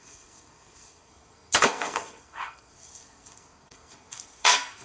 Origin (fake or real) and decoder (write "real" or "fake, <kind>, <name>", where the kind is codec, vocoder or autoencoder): fake, codec, SNAC